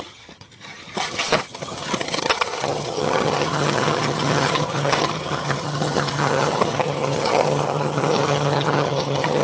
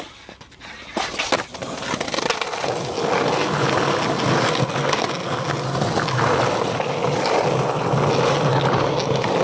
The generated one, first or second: first